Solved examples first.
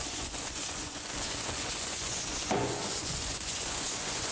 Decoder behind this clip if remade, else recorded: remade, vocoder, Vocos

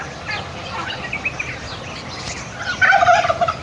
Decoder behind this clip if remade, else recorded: recorded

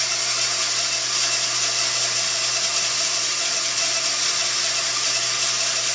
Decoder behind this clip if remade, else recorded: recorded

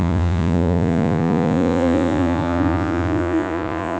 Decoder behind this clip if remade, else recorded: remade, vocoder, Vocos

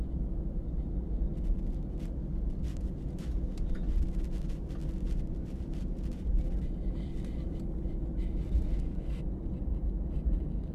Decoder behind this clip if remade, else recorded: recorded